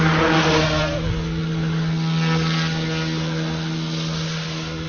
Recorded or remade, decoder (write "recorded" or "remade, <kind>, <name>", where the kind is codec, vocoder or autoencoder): recorded